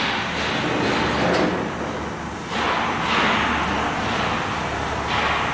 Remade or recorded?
recorded